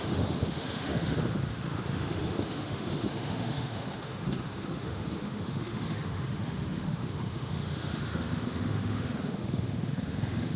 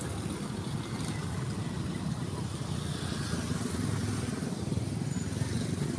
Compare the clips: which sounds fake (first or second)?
first